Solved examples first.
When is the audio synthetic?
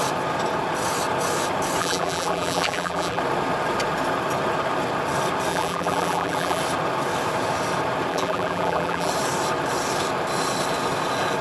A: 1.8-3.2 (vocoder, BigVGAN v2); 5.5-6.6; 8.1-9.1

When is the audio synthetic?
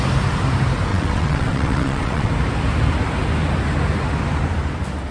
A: 0.9-2.3 (vocoder, WaveNeXt)